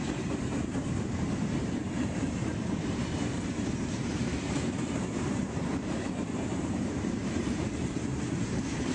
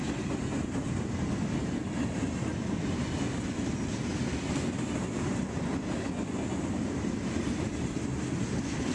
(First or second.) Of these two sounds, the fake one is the first